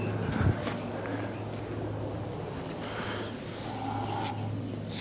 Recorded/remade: recorded